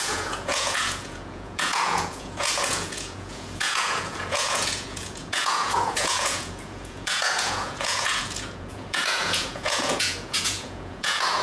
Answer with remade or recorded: remade